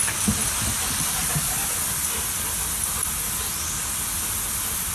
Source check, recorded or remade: recorded